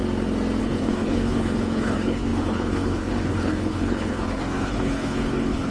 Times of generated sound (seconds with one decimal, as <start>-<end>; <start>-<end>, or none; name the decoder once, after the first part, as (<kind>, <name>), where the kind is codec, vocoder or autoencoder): 0.6-5.7 (codec, HILCodec)